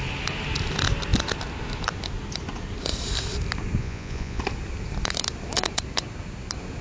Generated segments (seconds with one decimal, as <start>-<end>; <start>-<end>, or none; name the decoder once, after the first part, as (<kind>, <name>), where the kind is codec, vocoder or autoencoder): 3.8-4.4 (vocoder, Vocos)